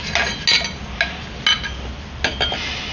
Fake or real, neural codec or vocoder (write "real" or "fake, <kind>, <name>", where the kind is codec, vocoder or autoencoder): real